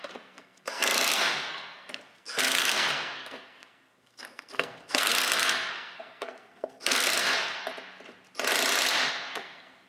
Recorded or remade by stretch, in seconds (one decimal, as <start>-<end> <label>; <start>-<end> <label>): 0.0-7.7 remade; 7.7-9.1 recorded; 9.1-9.9 remade